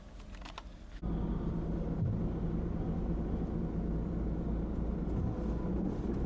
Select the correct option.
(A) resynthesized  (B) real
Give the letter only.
B